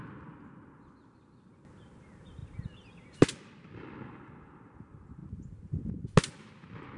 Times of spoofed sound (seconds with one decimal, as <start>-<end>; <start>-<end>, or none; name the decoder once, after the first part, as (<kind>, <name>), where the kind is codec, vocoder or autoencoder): none